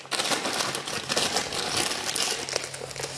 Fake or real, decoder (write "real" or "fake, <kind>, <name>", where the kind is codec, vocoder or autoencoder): real